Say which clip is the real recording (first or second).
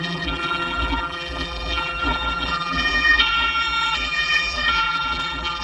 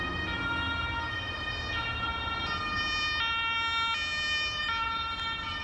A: second